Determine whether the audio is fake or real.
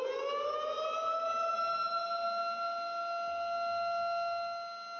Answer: real